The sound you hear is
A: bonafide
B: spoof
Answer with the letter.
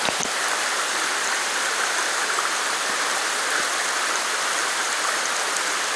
B